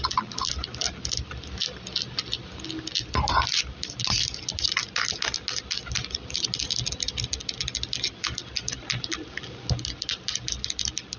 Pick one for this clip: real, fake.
real